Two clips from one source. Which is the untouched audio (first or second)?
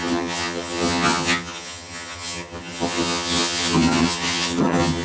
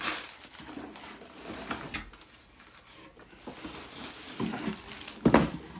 second